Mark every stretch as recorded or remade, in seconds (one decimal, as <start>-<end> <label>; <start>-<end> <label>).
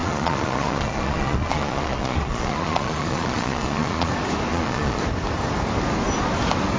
0.0-4.1 remade; 4.1-4.5 recorded; 4.5-5.0 remade; 5.0-6.8 recorded